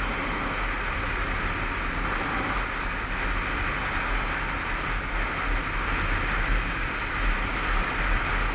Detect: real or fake real